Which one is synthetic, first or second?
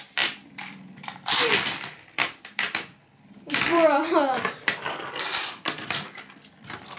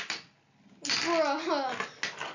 first